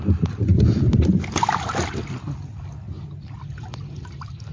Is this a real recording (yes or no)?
yes